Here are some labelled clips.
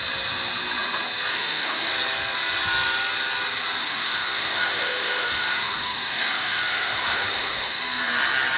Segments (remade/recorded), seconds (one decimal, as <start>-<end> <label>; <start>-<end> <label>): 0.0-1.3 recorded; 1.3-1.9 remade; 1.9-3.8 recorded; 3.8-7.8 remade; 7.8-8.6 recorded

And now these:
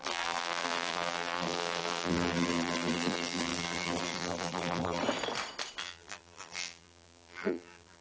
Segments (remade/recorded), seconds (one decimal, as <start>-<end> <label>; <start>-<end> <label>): 0.0-5.0 remade; 5.0-5.8 recorded; 5.8-8.0 remade

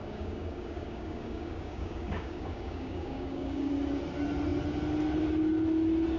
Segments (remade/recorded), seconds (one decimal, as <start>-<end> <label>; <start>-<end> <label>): 0.0-3.7 remade; 3.7-6.2 recorded

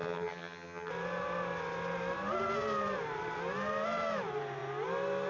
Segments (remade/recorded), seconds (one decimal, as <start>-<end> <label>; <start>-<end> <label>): 0.0-0.9 remade; 0.9-5.3 recorded

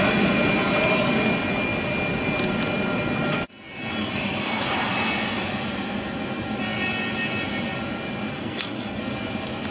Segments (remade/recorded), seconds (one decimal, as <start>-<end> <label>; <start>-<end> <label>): 0.0-4.0 recorded; 4.0-4.6 remade; 4.6-8.3 recorded; 8.3-9.0 remade; 9.0-9.7 recorded

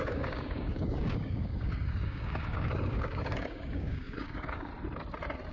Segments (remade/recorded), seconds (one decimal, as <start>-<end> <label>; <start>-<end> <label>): 0.0-4.7 remade; 4.7-5.5 recorded

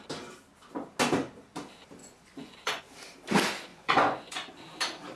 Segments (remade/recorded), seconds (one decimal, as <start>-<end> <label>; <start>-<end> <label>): 0.0-2.0 recorded; 2.0-2.8 remade; 2.8-3.7 recorded; 3.7-4.5 remade; 4.5-5.2 recorded

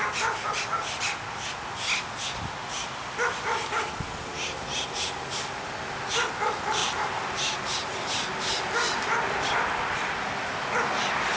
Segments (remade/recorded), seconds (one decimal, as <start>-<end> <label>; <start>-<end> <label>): 0.0-11.4 recorded